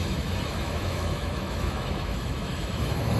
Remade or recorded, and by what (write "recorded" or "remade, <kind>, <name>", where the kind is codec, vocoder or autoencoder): remade, autoencoder, DAC-VAE